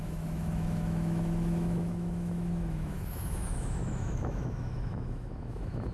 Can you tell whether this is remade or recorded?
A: remade